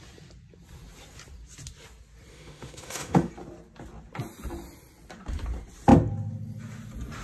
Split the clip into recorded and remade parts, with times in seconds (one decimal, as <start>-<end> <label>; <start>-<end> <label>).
0.0-2.3 recorded; 2.3-3.3 remade; 3.3-7.2 recorded